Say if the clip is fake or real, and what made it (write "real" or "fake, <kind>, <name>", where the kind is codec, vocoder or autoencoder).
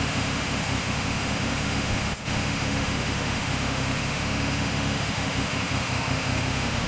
fake, autoencoder, DAC-VAE